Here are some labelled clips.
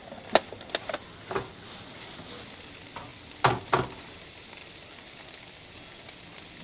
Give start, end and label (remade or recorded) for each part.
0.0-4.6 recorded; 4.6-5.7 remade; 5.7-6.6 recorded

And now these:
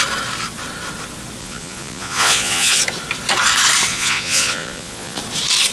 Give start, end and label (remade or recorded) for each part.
0.0-1.4 recorded; 1.4-2.8 remade; 2.8-3.9 recorded; 3.9-5.2 remade; 5.2-5.7 recorded

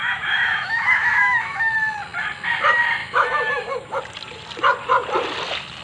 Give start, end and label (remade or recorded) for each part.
0.0-1.7 remade; 1.7-3.0 recorded; 3.0-4.0 remade; 4.0-5.8 recorded

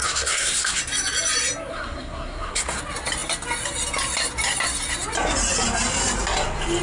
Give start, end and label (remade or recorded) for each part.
0.0-0.8 remade; 0.8-1.7 recorded; 1.7-2.8 remade; 2.8-6.8 recorded